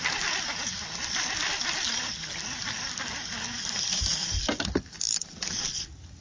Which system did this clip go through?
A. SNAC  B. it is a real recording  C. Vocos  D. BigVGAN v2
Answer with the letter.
B